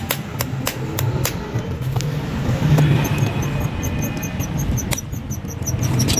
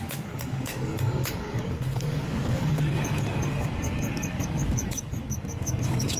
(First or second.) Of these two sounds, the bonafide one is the first